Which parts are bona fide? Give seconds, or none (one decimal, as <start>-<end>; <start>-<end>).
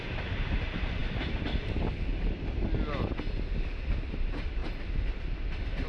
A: 1.0-3.6; 4.6-5.9